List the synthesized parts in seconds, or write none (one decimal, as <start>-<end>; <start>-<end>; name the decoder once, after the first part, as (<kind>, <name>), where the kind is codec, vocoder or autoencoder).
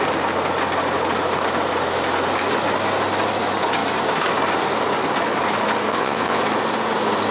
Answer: 5.9-6.4 (vocoder, WaveNeXt)